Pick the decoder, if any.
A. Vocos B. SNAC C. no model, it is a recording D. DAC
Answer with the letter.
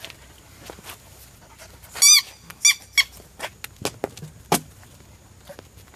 C